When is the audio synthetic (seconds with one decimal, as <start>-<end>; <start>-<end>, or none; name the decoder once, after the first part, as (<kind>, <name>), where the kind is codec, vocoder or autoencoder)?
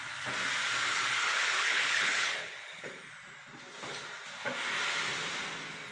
0.9-3.1 (codec, HILCodec)